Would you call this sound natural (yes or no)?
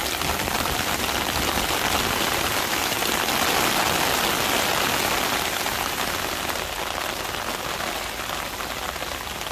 yes